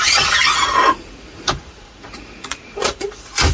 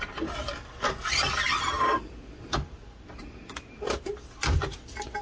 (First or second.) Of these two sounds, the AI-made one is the first